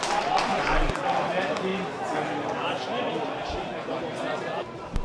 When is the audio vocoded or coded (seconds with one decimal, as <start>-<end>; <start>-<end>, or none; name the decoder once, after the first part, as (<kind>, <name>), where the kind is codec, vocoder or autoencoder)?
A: 0.5-1.0 (vocoder, Vocos)